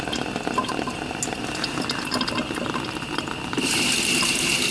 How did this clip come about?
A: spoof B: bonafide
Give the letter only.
B